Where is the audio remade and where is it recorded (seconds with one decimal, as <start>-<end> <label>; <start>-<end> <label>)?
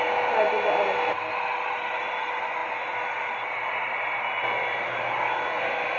0.0-6.0 recorded